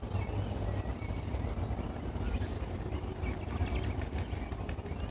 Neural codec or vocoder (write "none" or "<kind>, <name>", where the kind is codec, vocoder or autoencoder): none